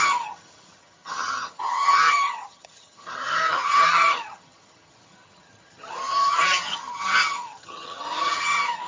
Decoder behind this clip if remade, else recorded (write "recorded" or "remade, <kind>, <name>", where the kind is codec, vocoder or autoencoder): remade, vocoder, HiFi-GAN